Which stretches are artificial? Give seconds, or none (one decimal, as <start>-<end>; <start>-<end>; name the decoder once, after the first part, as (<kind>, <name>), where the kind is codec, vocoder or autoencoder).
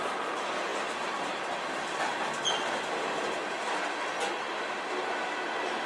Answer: none